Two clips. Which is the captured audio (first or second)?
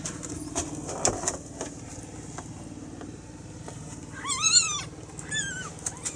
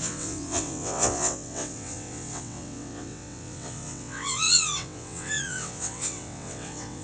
first